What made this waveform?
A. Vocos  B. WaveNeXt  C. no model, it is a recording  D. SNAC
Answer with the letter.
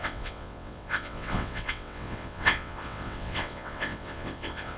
B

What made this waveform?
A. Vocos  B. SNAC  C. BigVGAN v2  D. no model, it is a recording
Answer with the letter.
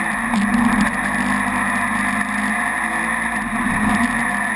D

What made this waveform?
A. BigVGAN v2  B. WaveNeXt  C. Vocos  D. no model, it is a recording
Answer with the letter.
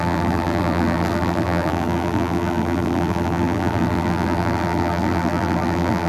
A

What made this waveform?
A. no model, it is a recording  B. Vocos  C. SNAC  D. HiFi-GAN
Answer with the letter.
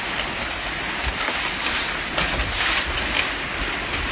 A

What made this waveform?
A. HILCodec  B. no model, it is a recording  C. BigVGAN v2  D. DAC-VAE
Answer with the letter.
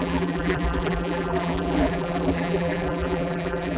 C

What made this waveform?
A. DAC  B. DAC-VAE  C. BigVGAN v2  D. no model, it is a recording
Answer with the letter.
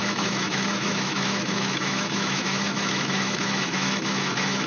B